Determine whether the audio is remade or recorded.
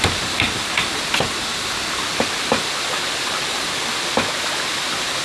recorded